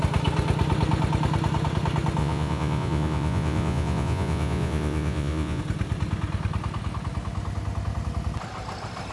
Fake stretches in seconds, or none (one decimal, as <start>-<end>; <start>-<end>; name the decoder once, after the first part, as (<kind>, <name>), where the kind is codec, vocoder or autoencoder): 2.2-5.6 (vocoder, Vocos)